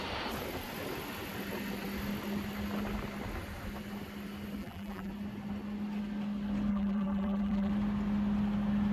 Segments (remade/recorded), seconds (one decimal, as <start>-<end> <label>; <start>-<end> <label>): 0.0-4.6 recorded; 4.6-5.1 remade; 5.1-6.7 recorded; 6.7-7.7 remade; 7.7-8.9 recorded